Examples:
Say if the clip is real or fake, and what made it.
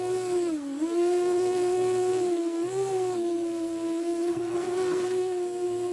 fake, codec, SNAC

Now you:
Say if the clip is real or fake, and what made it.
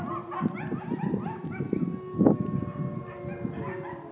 real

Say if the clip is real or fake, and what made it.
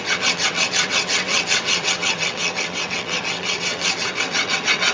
fake, vocoder, WaveNeXt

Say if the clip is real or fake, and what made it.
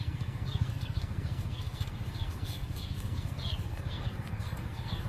fake, codec, SNAC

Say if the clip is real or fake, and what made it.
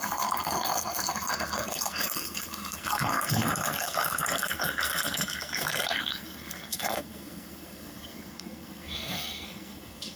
fake, codec, SNAC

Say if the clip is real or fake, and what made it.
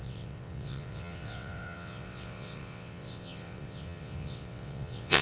fake, vocoder, WaveNeXt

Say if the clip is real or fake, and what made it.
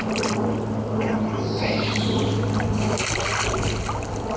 real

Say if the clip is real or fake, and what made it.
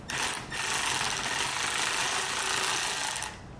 real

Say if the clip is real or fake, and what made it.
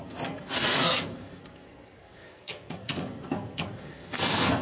fake, codec, SNAC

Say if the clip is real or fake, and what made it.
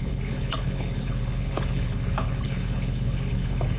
fake, codec, HILCodec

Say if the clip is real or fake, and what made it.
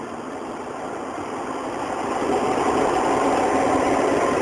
real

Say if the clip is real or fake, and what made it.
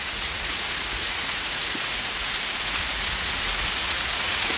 fake, vocoder, Vocos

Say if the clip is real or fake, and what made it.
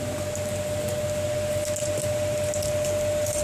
real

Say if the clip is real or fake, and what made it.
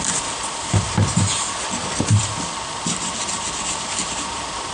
real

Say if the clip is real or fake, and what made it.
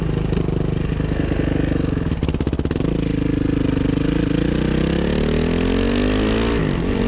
real